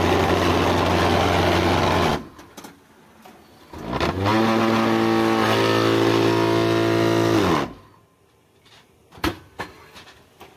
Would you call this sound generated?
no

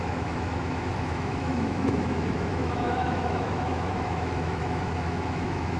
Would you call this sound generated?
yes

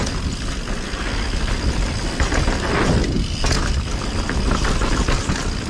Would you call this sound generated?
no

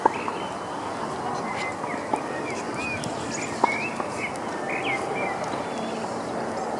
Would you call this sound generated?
no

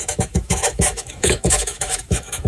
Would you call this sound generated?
yes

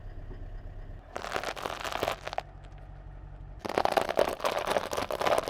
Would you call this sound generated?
no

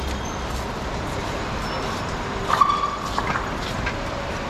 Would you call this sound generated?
no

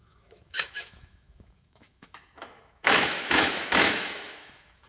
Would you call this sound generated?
yes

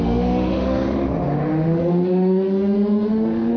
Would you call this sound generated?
yes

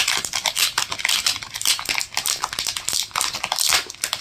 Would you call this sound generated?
no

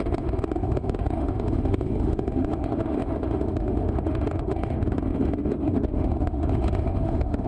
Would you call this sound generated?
yes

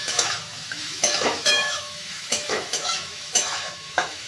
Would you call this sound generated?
yes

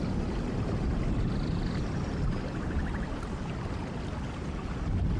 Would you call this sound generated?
no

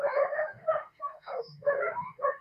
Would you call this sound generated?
yes